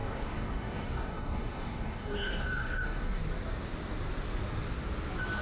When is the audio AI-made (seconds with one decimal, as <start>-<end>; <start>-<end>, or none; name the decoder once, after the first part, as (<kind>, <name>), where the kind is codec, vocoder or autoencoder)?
0.0-3.2 (codec, DAC)